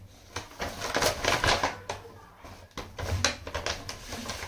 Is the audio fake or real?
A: real